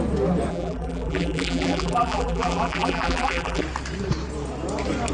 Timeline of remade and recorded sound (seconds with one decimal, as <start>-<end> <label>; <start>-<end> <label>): 0.0-0.5 recorded; 0.5-3.6 remade; 3.6-5.1 recorded